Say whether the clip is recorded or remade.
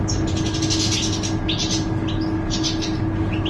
recorded